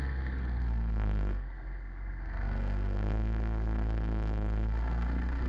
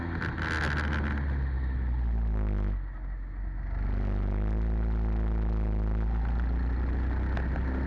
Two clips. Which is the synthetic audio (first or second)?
first